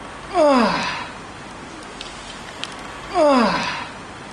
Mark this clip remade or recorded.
recorded